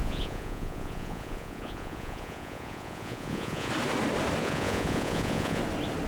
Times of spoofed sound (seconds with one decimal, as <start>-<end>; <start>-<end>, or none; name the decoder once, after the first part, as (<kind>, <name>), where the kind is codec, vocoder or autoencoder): 0.0-3.7 (vocoder, Vocos); 4.4-5.6